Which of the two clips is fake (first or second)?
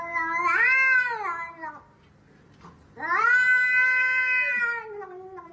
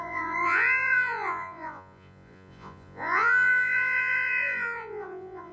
second